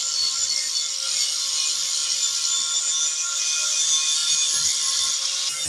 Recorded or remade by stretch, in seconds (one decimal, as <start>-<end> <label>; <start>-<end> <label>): 0.0-5.7 recorded